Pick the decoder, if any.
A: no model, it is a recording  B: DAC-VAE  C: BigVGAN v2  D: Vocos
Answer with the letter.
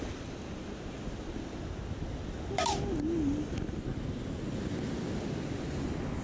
A